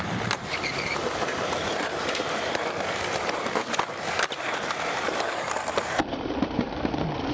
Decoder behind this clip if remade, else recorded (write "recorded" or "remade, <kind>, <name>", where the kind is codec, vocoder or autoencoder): remade, vocoder, BigVGAN v2